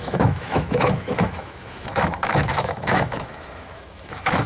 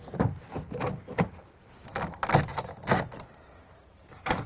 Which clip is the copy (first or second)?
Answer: first